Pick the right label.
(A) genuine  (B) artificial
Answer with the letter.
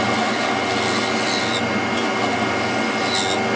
A